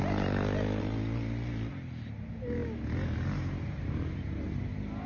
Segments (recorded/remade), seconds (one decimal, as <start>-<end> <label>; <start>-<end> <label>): 0.0-5.1 recorded